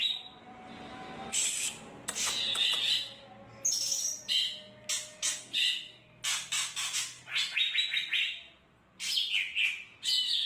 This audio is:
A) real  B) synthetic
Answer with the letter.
A